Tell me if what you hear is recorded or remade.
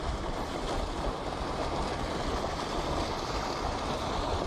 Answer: recorded